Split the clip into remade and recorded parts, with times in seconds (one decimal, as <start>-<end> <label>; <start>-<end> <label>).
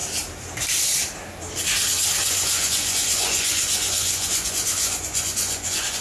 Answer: 0.0-2.2 recorded; 2.2-6.0 remade